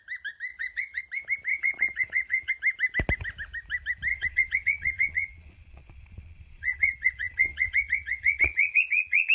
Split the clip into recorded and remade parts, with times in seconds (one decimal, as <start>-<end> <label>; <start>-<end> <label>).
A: 0.0-0.5 recorded; 0.5-1.0 remade; 1.0-1.5 recorded; 1.5-2.5 remade; 2.5-4.1 recorded; 4.1-9.3 remade